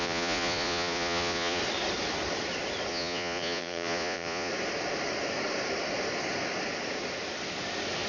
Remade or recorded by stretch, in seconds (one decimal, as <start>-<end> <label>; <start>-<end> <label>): 0.0-1.6 remade; 1.6-2.9 recorded; 2.9-4.5 remade; 4.5-8.1 recorded